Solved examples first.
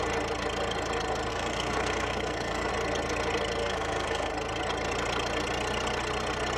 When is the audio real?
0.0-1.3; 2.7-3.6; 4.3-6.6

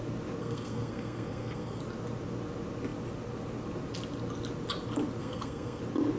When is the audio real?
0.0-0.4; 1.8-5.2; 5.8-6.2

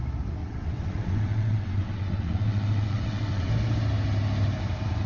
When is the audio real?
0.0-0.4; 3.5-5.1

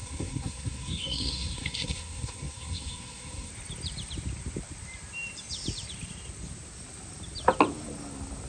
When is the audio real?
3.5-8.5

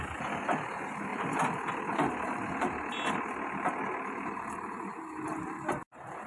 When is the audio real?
0.0-6.3

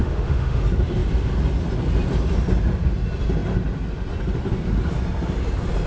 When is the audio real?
0.6-5.9

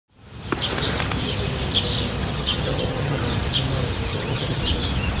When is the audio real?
0.0-2.3; 3.2-4.1; 4.6-5.2

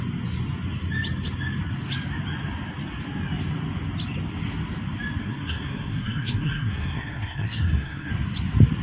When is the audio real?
0.0-5.2; 8.1-8.8